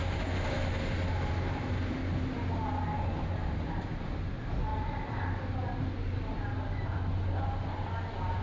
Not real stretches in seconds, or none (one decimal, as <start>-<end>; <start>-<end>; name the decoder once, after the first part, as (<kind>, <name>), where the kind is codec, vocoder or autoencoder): none